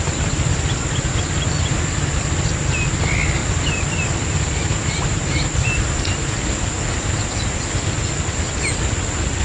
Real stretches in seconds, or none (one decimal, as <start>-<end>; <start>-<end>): 0.0-9.4